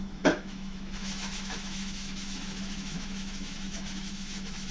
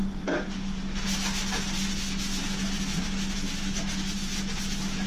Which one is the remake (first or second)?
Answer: first